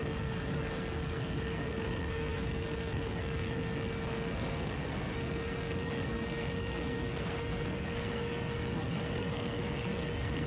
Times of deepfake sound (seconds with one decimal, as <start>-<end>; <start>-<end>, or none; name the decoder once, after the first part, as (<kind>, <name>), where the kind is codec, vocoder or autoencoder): 0.0-10.5 (codec, SNAC)